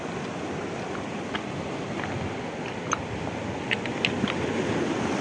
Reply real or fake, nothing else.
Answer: real